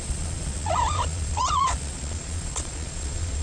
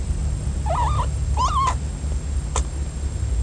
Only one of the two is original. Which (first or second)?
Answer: second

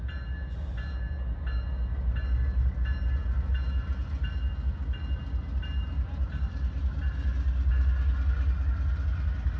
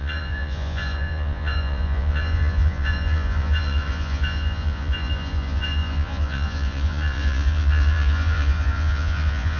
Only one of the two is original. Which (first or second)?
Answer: first